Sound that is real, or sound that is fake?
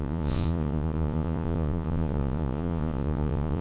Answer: fake